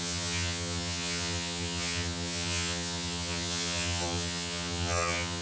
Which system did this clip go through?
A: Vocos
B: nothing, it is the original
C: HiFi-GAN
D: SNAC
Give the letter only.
C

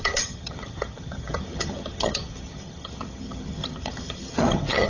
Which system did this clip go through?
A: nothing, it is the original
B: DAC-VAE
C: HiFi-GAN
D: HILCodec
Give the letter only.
C